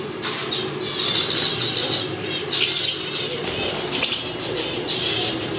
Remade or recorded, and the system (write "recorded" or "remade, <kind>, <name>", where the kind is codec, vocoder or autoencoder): recorded